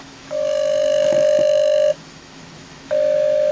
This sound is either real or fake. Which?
fake